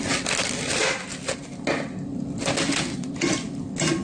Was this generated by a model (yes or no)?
no